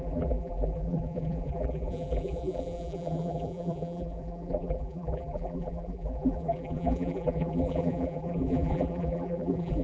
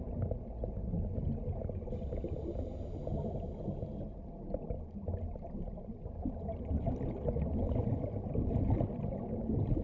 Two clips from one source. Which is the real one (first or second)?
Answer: second